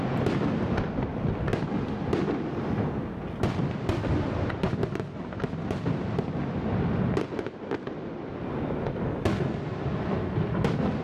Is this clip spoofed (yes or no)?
no